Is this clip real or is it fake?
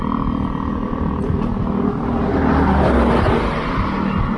real